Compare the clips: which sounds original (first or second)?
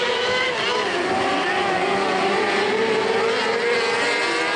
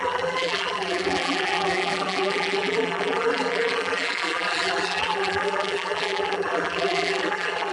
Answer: first